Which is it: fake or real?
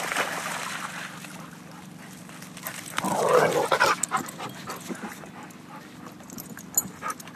real